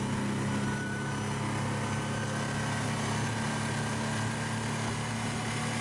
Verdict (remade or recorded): recorded